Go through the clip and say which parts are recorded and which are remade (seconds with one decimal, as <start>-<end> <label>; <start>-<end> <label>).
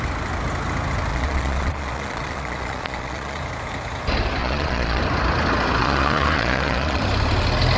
0.0-1.1 recorded; 1.1-3.4 remade; 3.4-4.4 recorded; 4.4-5.0 remade; 5.0-5.8 recorded; 5.8-7.0 remade; 7.0-7.8 recorded